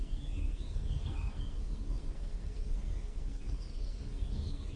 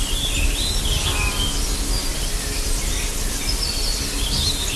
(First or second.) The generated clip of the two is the first